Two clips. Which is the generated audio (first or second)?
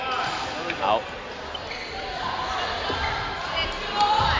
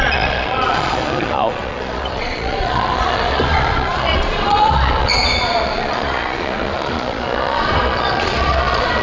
second